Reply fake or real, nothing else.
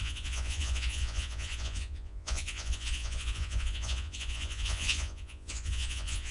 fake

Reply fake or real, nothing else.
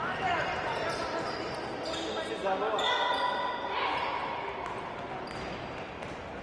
real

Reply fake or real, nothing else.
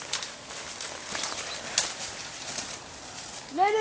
real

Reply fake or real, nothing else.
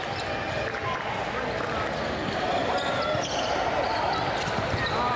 real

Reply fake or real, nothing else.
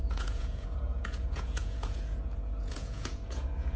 fake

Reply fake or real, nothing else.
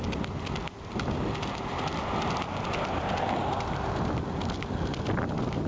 real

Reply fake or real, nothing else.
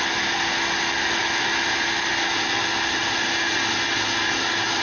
real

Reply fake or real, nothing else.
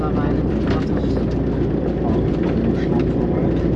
real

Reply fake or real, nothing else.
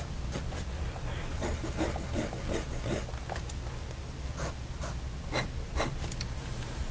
real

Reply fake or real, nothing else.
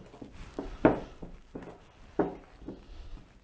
real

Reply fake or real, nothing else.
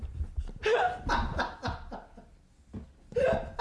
real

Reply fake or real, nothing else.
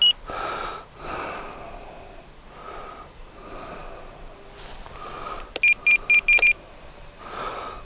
real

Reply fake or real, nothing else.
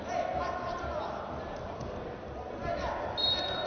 real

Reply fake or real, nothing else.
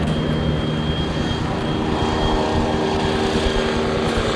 real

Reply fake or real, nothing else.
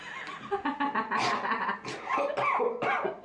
real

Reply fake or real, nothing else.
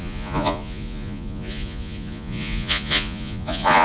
fake